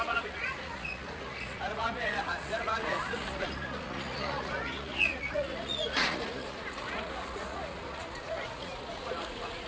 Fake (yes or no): yes